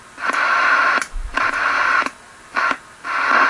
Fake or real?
real